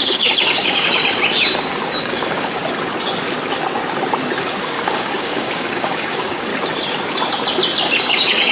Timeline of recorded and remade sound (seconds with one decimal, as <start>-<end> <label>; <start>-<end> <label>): 0.0-1.0 remade; 1.0-2.0 recorded; 2.0-2.6 remade; 2.6-4.4 recorded; 4.4-6.5 remade; 6.5-8.0 recorded; 8.0-8.5 remade